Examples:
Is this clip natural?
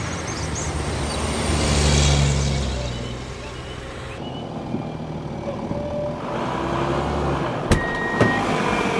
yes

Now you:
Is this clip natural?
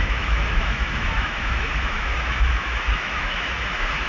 no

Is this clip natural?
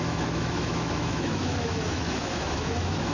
no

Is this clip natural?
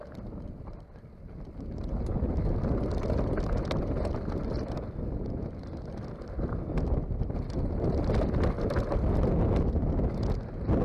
yes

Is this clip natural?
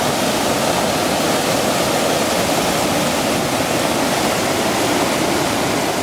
yes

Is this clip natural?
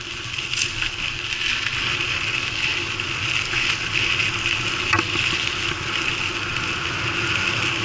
yes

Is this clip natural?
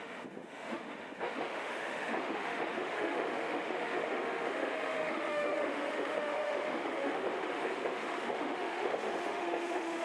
no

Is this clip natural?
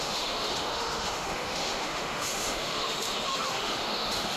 no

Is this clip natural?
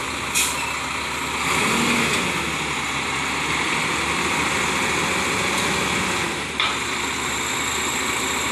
yes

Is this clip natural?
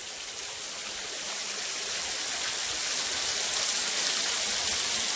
yes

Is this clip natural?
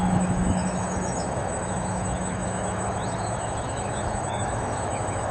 no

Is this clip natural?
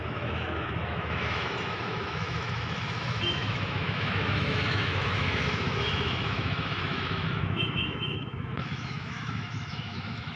no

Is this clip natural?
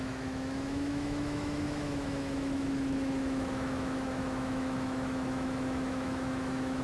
no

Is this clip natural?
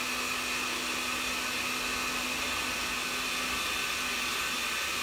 yes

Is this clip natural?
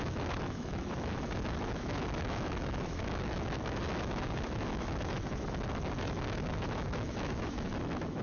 no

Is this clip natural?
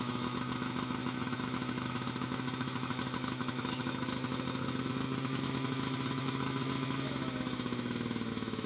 no